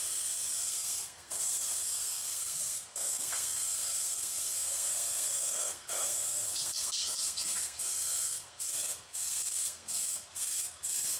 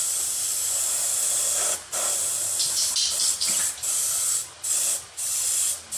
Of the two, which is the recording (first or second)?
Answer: second